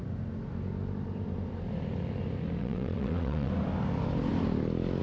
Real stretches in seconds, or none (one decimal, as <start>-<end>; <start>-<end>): 0.0-2.6; 3.5-5.0